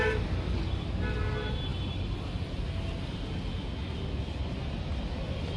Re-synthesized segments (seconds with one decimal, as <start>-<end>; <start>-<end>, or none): none